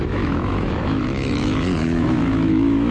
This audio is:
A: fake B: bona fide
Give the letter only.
A